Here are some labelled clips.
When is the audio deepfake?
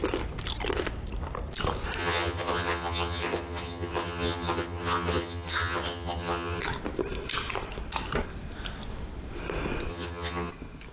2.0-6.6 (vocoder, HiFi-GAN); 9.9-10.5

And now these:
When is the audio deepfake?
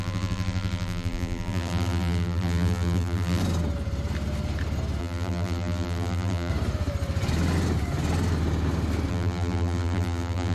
0.0-3.4 (vocoder, BigVGAN v2); 5.0-6.5; 9.1-10.5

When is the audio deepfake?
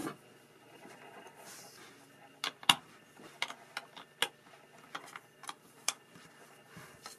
5.4-6.4 (vocoder, BigVGAN v2)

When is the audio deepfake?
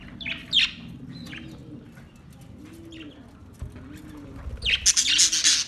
none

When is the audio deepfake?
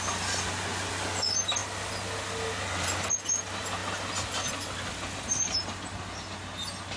none